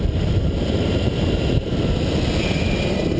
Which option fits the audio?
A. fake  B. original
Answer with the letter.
B